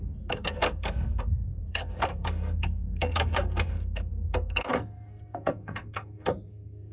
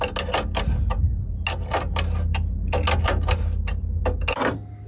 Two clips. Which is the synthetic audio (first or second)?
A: first